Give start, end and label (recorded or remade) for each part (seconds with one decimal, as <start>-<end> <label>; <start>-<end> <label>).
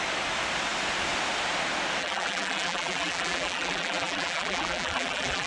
0.0-2.0 recorded; 2.0-5.5 remade